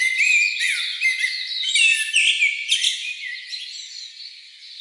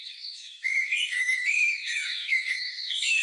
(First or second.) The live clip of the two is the first